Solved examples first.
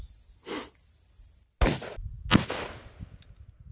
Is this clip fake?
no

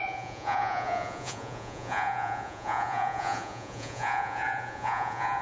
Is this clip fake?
yes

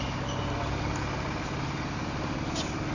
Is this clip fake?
no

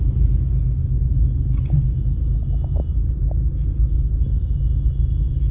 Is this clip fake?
no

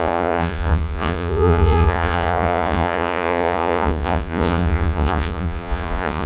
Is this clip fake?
yes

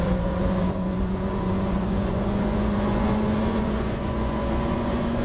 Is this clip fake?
yes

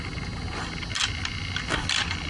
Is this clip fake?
no